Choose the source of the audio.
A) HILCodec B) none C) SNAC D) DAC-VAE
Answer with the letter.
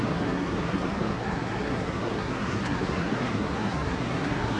C